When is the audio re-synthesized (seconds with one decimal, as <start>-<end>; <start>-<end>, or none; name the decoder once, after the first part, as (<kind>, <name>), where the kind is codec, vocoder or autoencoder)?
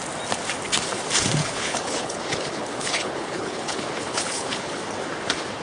1.4-4.8 (codec, HILCodec)